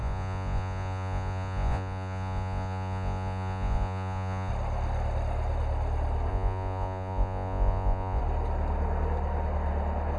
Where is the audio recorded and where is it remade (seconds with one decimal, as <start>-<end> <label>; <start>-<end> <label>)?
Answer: 0.0-4.5 remade; 4.5-6.3 recorded; 6.3-8.2 remade; 8.2-10.2 recorded